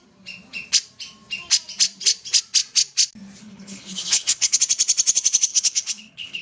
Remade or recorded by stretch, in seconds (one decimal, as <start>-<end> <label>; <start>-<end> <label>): 0.0-3.4 recorded; 3.4-4.6 remade; 4.6-5.5 recorded; 5.5-6.4 remade